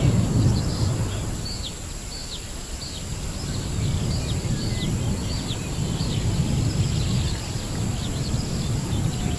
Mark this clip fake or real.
real